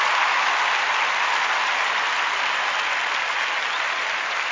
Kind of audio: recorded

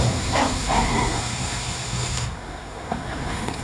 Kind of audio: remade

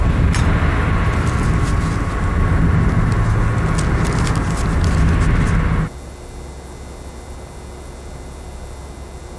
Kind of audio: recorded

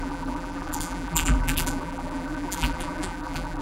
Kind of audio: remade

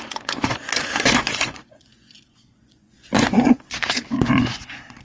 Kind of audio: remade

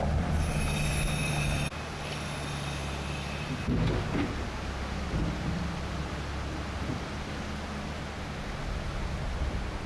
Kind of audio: recorded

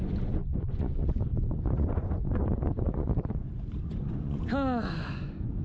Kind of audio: remade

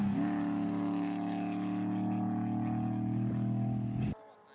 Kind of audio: recorded